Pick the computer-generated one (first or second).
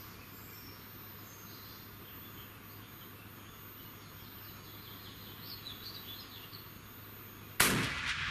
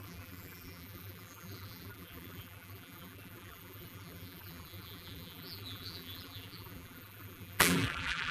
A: second